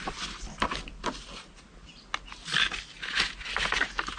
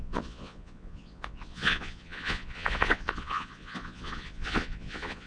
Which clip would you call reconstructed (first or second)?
second